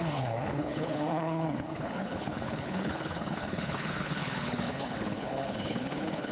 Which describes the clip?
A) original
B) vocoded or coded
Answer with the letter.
B